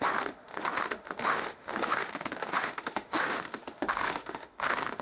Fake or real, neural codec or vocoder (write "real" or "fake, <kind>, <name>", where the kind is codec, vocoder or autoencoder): fake, autoencoder, DAC-VAE